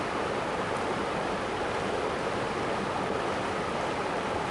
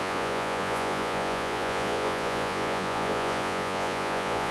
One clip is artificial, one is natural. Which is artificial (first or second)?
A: second